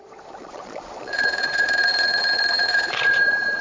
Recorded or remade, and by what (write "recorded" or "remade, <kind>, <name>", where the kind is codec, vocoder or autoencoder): remade, vocoder, Vocos